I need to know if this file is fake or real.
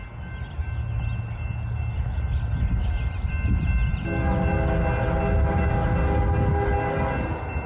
real